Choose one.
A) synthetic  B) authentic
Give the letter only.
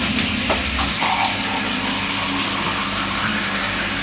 B